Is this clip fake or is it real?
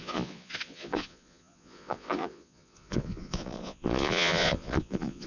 fake